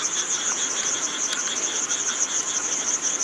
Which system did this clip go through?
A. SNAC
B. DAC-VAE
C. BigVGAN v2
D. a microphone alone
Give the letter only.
D